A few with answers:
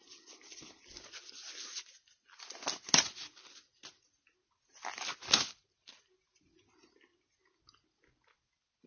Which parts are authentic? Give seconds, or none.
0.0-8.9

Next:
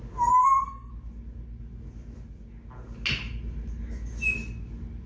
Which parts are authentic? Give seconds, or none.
0.0-0.4; 0.9-5.1

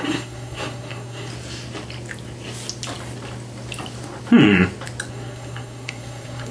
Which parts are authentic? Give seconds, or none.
1.3-5.1

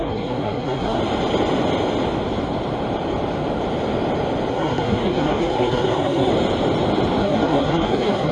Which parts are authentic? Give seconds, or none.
1.0-4.5; 6.3-7.2

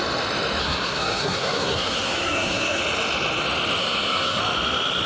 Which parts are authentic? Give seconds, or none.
0.0-0.6; 2.8-3.8; 4.4-5.1

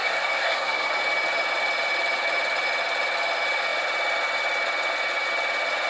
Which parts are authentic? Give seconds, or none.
0.9-5.9